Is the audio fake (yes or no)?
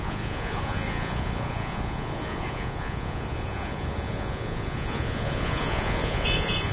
yes